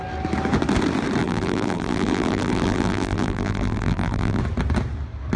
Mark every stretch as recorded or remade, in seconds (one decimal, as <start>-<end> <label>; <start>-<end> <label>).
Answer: 0.0-1.2 recorded; 1.2-4.4 remade; 4.4-5.4 recorded